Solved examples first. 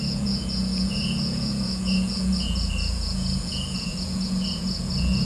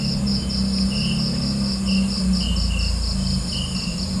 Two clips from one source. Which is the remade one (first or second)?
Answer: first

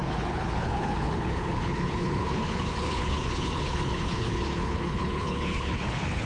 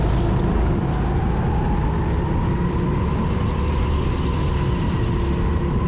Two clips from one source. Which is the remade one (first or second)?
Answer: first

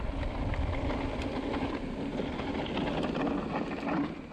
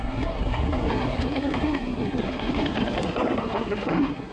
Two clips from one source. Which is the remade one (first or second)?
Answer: second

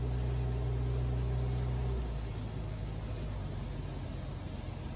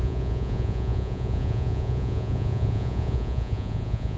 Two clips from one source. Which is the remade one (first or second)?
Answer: second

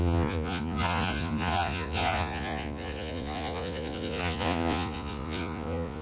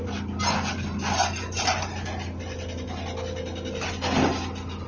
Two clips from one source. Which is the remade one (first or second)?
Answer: first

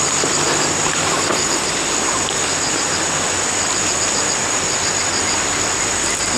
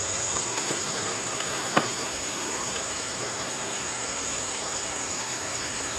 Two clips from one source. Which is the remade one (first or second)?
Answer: second